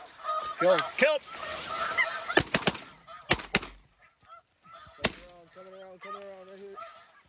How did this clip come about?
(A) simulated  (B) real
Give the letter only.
B